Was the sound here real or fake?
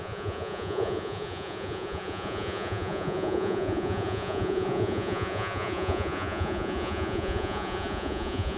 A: fake